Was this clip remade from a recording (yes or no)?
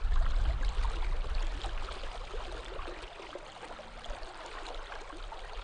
no